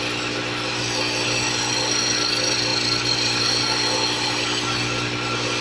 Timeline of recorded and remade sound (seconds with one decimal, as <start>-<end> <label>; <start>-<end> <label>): 0.0-5.6 recorded